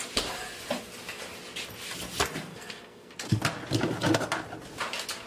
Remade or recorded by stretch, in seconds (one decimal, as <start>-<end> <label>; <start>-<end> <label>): 0.0-2.5 recorded; 2.5-3.4 remade; 3.4-5.3 recorded